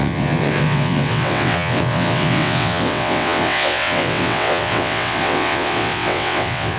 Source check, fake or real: fake